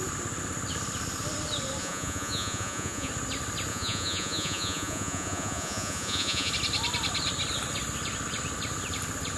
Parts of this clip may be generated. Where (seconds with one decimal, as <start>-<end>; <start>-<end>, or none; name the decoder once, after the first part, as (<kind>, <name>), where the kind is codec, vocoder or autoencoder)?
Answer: 1.8-3.1 (vocoder, Vocos); 3.7-6.5